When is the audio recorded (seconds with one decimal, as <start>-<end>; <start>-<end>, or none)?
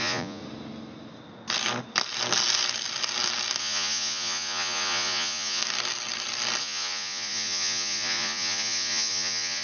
0.4-3.6; 5.6-6.6